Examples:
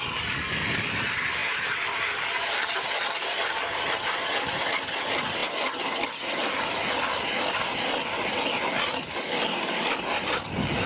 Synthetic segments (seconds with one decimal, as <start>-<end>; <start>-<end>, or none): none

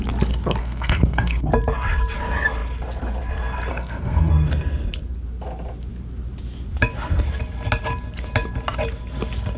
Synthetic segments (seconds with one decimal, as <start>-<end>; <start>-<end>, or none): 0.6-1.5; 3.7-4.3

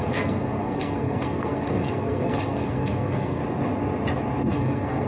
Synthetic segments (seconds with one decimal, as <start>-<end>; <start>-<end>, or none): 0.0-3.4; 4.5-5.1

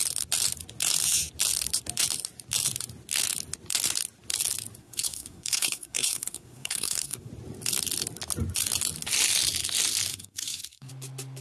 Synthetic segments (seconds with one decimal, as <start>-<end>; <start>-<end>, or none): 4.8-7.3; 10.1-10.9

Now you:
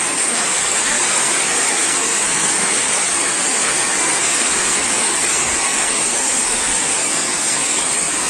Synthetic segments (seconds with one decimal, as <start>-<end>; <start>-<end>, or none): 0.0-8.3